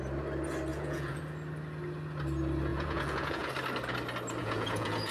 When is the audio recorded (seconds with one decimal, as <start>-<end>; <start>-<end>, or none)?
0.0-0.7; 1.2-2.7; 3.5-4.4